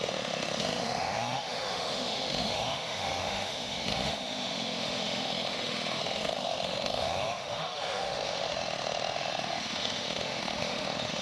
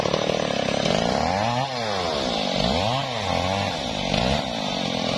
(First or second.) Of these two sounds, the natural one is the second